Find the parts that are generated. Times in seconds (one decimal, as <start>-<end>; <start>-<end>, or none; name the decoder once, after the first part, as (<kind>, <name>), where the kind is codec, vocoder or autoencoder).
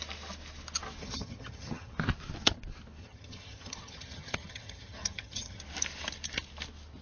1.0-1.9 (vocoder, HiFi-GAN); 3.0-5.6